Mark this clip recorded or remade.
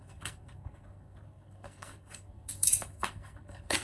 remade